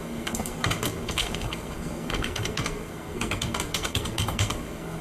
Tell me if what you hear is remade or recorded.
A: remade